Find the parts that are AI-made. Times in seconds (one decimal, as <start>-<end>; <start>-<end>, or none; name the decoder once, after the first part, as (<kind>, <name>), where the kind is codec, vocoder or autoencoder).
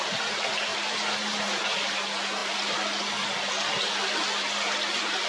0.7-1.6 (vocoder, BigVGAN v2)